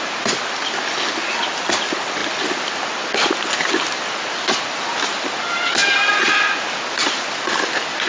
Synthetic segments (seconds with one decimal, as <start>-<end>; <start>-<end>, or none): none